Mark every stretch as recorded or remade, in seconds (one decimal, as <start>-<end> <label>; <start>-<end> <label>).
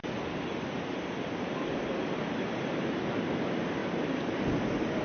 0.0-5.0 recorded